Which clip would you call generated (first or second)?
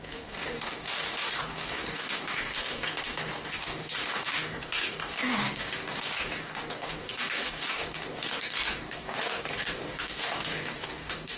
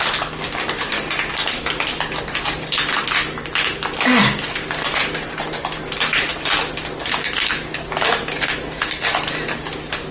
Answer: first